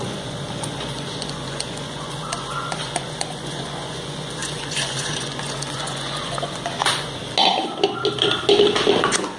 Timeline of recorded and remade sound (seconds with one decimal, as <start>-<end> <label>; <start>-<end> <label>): 0.0-7.2 remade; 7.2-9.0 recorded; 9.0-9.4 remade